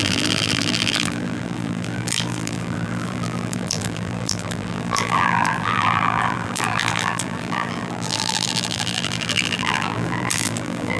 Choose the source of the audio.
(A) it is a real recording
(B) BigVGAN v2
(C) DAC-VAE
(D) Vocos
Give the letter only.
B